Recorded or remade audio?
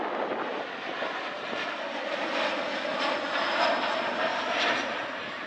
recorded